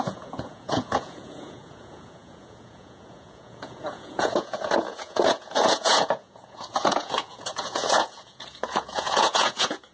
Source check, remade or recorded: remade